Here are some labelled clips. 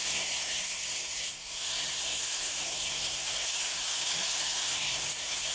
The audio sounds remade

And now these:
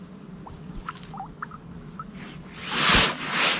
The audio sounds recorded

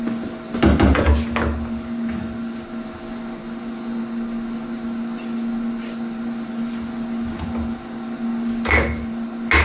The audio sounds recorded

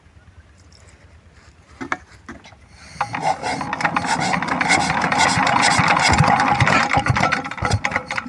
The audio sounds recorded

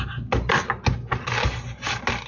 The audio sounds recorded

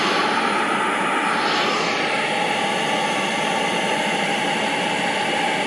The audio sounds recorded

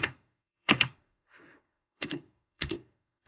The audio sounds remade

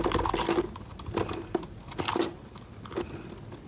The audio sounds recorded